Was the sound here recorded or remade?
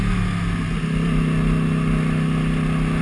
recorded